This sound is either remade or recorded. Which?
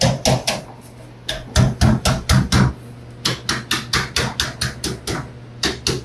recorded